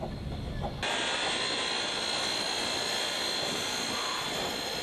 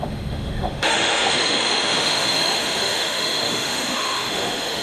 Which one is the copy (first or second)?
second